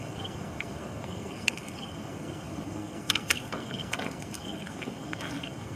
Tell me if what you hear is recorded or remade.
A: remade